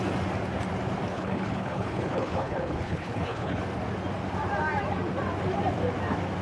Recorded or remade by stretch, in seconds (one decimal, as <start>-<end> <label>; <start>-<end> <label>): 0.0-1.1 recorded; 1.1-3.6 remade; 3.6-6.4 recorded